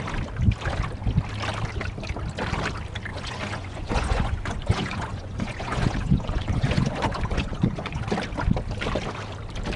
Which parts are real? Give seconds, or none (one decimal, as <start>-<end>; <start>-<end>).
0.0-3.1; 8.0-9.8